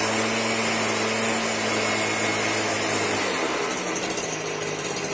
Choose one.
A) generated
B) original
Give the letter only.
B